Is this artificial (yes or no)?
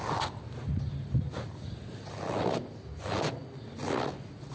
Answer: no